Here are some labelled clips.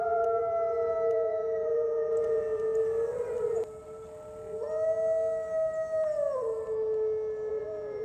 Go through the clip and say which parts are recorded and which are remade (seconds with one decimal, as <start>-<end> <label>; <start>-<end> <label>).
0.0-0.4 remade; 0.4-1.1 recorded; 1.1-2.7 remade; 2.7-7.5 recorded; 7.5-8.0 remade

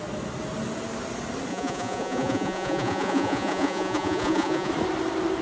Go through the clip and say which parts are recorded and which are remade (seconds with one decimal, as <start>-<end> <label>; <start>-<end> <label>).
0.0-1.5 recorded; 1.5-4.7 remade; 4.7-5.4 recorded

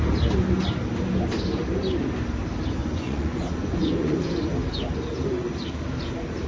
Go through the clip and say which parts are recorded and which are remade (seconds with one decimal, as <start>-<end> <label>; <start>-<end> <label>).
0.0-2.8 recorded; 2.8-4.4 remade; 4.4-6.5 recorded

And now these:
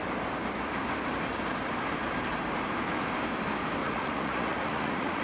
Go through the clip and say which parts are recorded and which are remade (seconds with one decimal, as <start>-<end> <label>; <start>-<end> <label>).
0.0-3.8 recorded; 3.8-5.2 remade

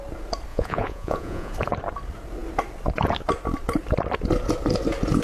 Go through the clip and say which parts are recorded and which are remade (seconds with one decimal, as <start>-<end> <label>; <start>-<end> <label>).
0.0-0.5 recorded; 0.5-1.5 remade; 1.5-5.2 recorded

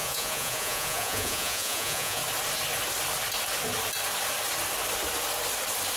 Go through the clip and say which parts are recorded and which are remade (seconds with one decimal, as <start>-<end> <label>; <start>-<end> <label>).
0.0-2.2 remade; 2.2-6.0 recorded